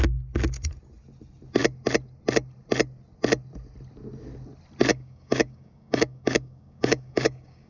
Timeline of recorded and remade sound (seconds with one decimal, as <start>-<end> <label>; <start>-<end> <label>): 0.0-4.9 recorded; 4.9-7.7 remade